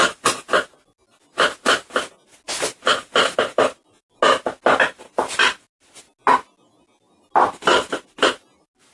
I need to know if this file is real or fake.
real